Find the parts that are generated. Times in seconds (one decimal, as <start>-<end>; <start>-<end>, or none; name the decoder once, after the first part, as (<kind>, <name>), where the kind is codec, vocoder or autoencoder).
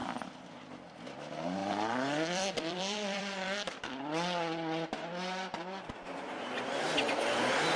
0.0-0.7 (vocoder, BigVGAN v2); 1.6-4.0